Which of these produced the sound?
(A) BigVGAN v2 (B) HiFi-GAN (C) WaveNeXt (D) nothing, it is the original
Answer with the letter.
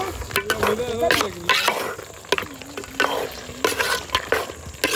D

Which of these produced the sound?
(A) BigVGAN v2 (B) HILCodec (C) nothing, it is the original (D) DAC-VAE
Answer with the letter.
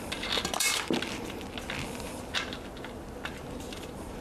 C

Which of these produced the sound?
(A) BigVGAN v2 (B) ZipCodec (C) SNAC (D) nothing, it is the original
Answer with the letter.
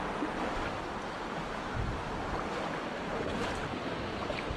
D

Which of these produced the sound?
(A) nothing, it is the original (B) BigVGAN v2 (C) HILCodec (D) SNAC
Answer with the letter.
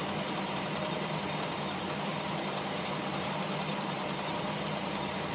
B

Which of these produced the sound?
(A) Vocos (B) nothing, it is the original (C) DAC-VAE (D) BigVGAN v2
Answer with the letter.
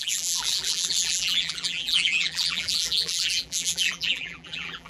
D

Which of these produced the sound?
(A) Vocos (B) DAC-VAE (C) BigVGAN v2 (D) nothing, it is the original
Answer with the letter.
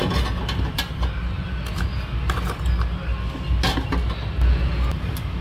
D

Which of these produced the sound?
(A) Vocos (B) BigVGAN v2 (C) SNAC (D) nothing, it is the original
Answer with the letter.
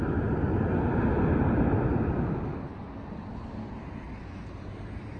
D